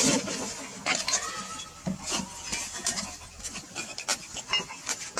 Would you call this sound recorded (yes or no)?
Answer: yes